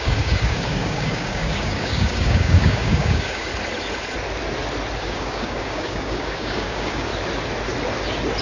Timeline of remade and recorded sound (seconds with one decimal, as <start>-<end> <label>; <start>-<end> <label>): 0.0-3.5 remade; 3.5-5.0 recorded; 5.0-7.1 remade; 7.1-8.4 recorded